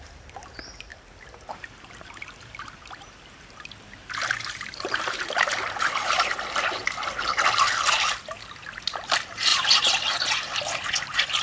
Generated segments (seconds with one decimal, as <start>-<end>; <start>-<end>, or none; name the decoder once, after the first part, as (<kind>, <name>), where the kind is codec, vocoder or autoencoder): 0.9-5.8 (vocoder, BigVGAN v2)